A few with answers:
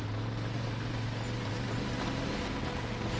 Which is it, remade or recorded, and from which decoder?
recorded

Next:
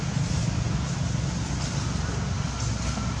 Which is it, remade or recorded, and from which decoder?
recorded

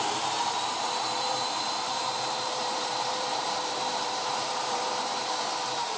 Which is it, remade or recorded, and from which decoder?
remade, vocoder, BigVGAN v2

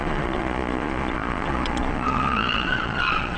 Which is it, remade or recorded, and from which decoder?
remade, vocoder, Vocos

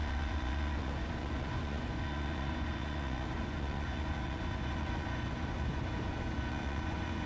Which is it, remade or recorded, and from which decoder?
remade, vocoder, Vocos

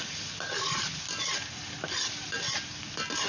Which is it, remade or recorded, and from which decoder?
recorded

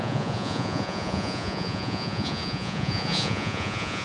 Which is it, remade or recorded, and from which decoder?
remade, vocoder, Vocos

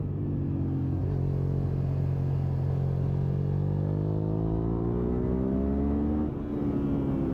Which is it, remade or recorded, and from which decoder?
recorded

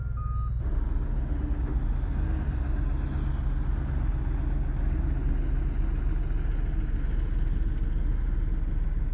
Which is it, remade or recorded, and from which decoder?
recorded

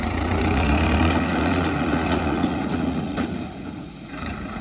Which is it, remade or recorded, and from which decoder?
remade, vocoder, Vocos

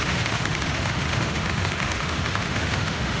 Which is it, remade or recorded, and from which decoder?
remade, autoencoder, DAC-VAE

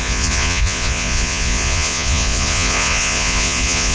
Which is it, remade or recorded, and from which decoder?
remade, vocoder, Vocos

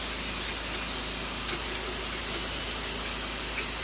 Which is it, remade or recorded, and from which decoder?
recorded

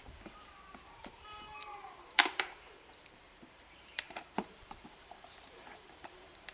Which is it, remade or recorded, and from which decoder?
remade, vocoder, BigVGAN v2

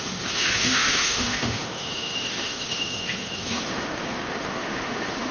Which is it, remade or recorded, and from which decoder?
remade, autoencoder, DAC-VAE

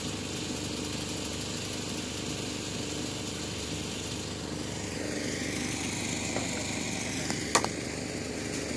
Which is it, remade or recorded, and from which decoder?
recorded